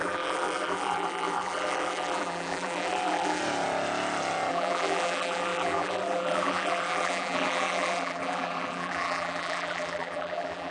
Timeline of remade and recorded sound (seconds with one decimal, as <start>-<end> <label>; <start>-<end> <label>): 0.0-3.4 remade; 3.4-4.5 recorded; 4.5-10.7 remade